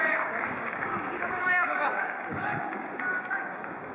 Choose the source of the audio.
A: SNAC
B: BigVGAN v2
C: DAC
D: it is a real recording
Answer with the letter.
C